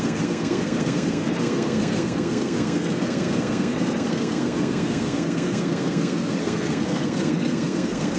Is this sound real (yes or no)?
no